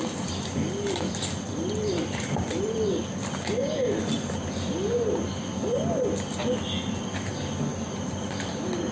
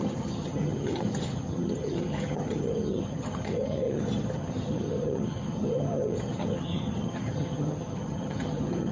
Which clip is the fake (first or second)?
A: second